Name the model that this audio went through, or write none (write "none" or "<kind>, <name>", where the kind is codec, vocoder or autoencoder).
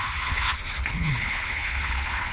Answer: codec, HILCodec